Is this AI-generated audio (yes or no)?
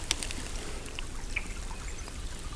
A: no